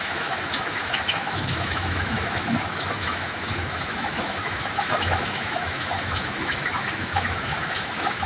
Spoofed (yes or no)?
yes